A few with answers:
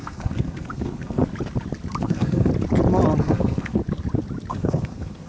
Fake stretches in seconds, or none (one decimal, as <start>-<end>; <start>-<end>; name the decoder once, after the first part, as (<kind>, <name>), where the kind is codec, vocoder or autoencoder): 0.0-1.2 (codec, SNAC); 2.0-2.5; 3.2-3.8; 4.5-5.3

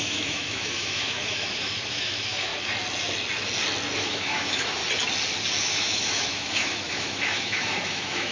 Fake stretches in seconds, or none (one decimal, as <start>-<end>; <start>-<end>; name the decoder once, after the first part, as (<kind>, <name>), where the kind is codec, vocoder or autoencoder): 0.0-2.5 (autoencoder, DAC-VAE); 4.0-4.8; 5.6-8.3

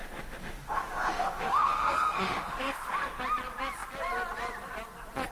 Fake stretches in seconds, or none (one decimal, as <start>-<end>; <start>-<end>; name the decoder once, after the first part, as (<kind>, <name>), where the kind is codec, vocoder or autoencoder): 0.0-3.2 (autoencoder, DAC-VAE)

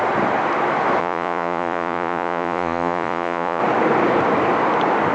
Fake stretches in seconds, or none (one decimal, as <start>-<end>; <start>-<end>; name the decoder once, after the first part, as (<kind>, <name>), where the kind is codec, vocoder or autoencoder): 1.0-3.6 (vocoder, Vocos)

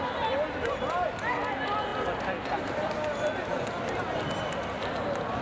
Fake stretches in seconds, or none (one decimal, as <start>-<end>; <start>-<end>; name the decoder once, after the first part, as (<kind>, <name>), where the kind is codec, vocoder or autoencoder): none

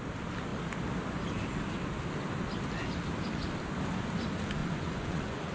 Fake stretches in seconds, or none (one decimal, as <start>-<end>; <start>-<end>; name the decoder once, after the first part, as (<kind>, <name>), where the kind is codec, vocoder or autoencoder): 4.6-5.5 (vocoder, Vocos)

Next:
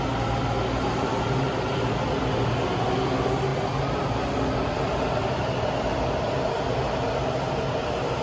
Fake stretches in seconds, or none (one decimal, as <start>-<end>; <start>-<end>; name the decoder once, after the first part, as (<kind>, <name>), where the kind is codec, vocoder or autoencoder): none

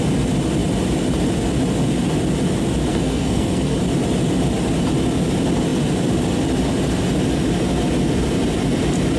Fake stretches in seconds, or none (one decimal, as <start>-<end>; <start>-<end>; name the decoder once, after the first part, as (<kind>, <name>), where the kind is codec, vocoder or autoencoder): 2.9-3.8 (codec, SNAC)